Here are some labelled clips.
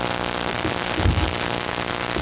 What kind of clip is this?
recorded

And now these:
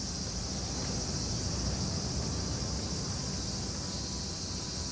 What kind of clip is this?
recorded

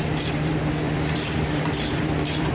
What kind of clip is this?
remade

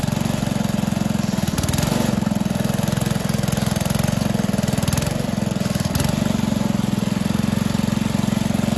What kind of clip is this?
recorded